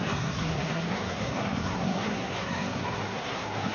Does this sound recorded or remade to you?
remade